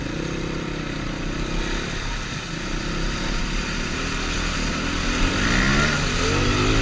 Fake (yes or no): no